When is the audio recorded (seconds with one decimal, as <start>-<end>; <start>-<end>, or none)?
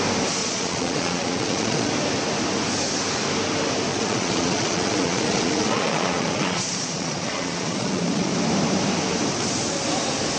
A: 0.0-0.4; 1.9-3.9; 8.3-10.4